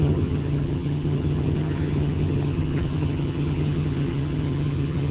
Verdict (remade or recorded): remade